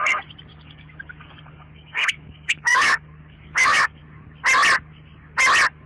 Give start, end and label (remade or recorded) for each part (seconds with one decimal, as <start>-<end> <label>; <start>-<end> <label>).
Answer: 0.0-0.5 recorded; 0.5-4.0 remade; 4.0-5.9 recorded